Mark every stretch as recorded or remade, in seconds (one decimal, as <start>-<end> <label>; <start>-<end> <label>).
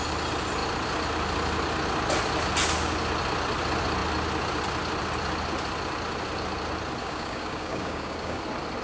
0.0-7.0 recorded; 7.0-8.4 remade; 8.4-8.8 recorded